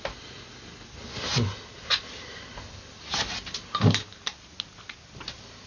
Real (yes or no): yes